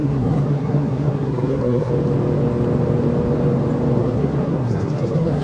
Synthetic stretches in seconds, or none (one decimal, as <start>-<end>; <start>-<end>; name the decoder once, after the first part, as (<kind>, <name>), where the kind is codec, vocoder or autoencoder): 0.0-1.9 (codec, SNAC); 4.0-5.4